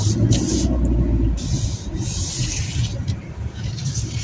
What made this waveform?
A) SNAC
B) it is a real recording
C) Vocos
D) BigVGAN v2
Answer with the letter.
B